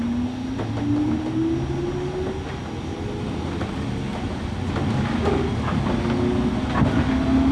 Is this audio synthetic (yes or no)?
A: no